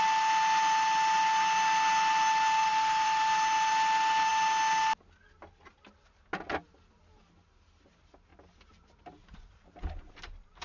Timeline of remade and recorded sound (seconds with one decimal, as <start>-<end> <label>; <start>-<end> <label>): 0.0-2.7 recorded; 2.7-3.7 remade; 3.7-8.3 recorded; 8.3-10.1 remade; 10.1-10.6 recorded